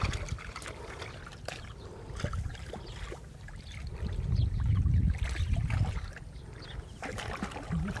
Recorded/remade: recorded